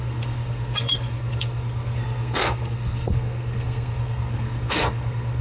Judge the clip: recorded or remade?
remade